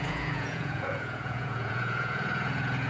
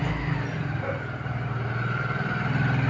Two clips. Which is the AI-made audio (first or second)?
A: first